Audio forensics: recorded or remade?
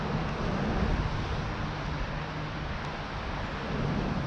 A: recorded